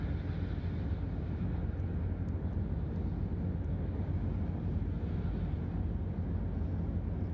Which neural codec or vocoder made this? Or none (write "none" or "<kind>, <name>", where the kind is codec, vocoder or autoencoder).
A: none